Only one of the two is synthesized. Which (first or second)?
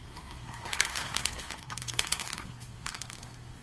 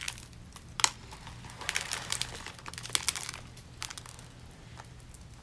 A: first